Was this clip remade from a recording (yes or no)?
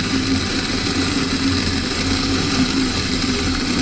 yes